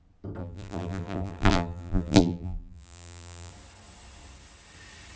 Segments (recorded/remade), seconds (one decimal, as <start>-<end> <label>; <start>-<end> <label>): 0.0-0.4 recorded; 0.4-3.5 remade; 3.5-5.2 recorded